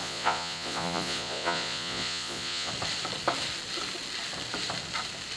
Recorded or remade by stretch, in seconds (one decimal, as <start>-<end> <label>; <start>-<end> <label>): 0.0-2.7 remade; 2.7-5.4 recorded